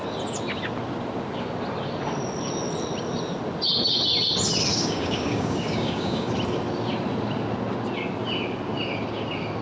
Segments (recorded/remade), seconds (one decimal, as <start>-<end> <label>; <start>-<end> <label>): 0.0-4.7 recorded; 4.7-6.3 remade; 6.3-9.6 recorded